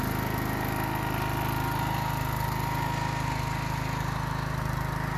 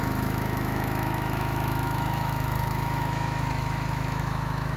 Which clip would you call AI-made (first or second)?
second